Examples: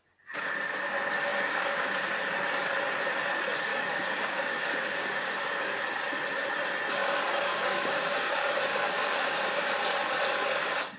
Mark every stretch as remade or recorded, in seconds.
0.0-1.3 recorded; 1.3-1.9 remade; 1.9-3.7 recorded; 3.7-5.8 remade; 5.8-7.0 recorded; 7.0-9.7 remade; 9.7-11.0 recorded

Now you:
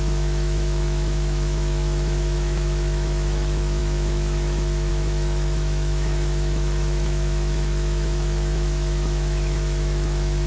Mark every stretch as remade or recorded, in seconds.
0.0-10.5 remade

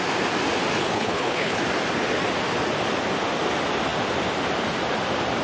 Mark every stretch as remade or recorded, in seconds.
0.0-0.8 recorded; 0.8-1.6 remade; 1.6-5.4 recorded

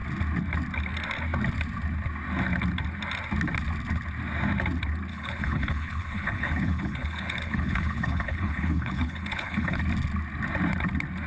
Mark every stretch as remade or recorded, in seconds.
0.0-5.1 recorded; 5.1-9.8 remade; 9.8-11.3 recorded

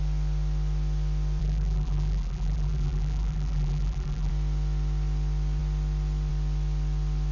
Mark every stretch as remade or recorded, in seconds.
0.0-1.4 recorded; 1.4-4.3 remade; 4.3-7.3 recorded

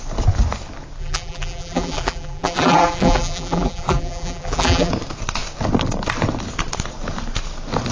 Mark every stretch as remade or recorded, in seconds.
0.0-1.0 recorded; 1.0-4.9 remade; 4.9-7.9 recorded

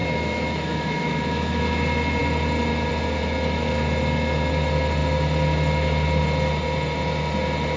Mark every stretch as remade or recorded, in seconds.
0.0-1.6 remade; 1.6-7.8 recorded